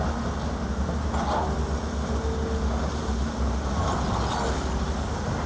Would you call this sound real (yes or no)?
yes